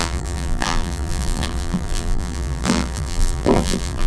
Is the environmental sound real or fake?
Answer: fake